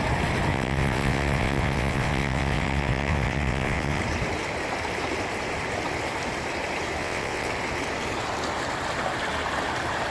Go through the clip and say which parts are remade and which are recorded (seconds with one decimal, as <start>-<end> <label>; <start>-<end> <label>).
0.0-0.5 recorded; 0.5-4.0 remade; 4.0-7.0 recorded; 7.0-7.5 remade; 7.5-10.1 recorded